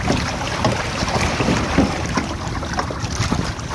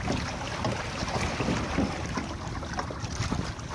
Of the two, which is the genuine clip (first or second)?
second